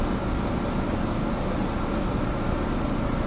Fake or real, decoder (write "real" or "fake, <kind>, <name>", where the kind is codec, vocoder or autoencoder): real